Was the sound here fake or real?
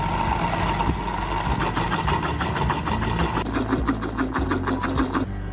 real